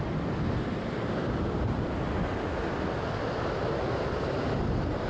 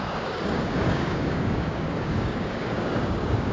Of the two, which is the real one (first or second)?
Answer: first